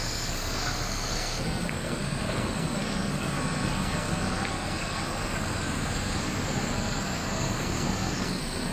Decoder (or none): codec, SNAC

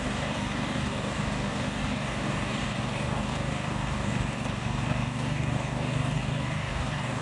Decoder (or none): codec, DAC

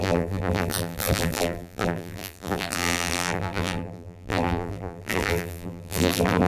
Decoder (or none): vocoder, BigVGAN v2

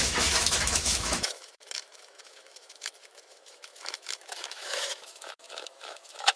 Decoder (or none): autoencoder, DAC-VAE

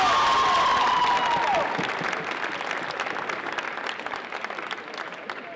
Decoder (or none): none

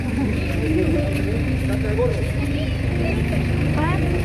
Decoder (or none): none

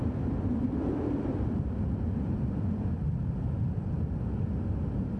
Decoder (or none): none